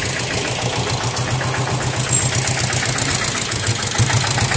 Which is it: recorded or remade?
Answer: recorded